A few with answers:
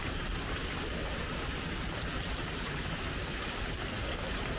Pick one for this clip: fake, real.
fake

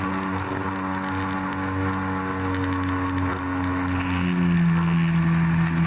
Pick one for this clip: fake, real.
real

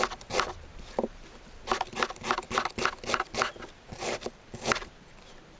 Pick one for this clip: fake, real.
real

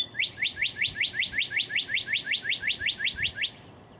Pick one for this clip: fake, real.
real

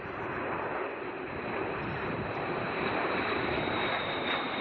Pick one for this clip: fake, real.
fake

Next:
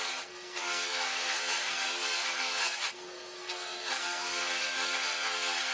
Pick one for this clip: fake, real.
fake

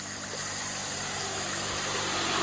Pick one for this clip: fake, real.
real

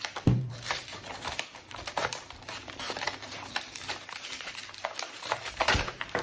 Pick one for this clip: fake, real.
fake